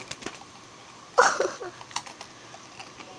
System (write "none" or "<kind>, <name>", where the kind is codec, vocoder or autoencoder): vocoder, BigVGAN v2